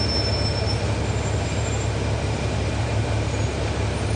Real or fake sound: real